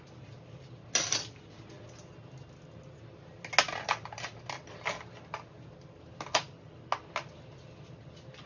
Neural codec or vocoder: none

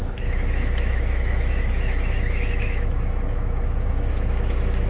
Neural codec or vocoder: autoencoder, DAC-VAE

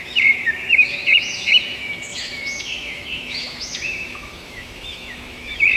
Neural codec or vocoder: autoencoder, DAC-VAE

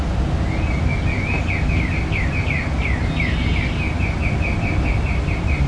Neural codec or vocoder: none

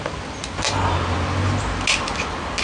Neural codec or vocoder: none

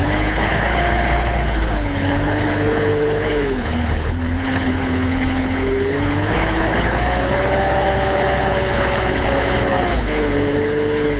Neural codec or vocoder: codec, HILCodec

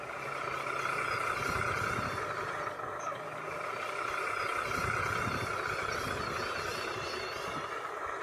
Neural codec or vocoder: none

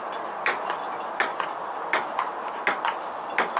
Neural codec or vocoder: none